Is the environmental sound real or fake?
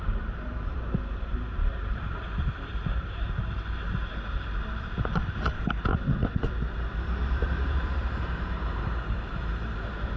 fake